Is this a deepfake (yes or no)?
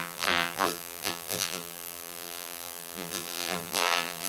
yes